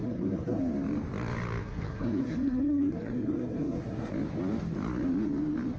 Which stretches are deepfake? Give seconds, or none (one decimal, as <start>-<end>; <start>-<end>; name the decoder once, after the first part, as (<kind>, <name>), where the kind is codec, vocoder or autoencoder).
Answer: 0.0-0.6 (codec, SNAC); 1.6-4.1